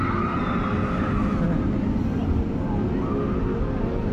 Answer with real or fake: real